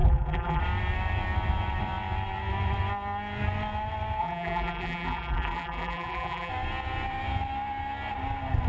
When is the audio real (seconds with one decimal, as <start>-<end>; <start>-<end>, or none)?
0.6-4.2; 6.5-8.7

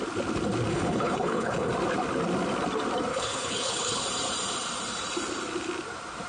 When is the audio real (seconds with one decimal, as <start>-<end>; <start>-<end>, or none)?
0.0-0.7; 1.7-3.1; 4.0-6.3